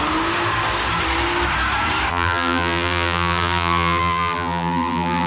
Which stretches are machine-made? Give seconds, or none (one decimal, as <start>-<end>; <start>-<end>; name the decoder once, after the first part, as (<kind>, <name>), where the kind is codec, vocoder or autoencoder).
2.1-5.3 (vocoder, BigVGAN v2)